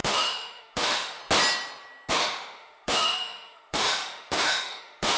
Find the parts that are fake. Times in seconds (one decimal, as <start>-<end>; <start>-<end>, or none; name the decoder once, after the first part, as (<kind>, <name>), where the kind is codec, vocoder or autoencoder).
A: 0.0-1.2 (autoencoder, DAC-VAE); 2.1-5.2